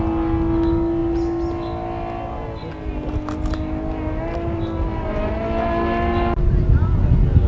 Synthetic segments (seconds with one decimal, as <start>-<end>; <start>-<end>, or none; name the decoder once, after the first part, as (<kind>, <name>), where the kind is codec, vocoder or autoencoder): none